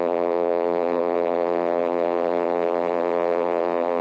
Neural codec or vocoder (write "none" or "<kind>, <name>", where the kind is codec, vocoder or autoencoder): vocoder, BigVGAN v2